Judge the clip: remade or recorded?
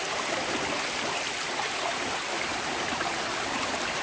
recorded